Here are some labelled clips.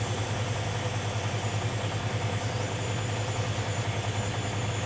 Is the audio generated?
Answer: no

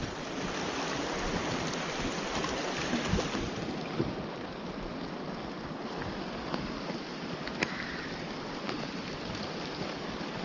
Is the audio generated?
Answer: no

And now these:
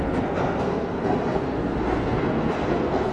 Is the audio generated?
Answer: yes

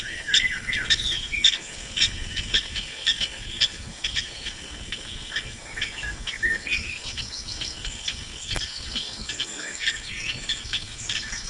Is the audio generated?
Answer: yes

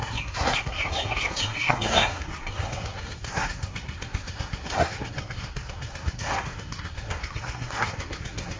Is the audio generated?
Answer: yes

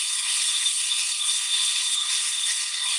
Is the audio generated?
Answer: yes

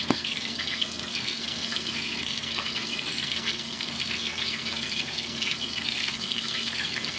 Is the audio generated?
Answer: yes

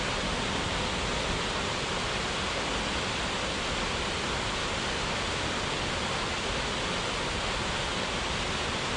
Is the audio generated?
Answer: no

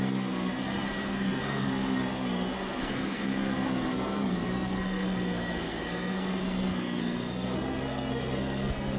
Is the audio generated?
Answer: yes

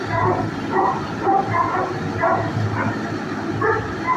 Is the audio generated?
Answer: no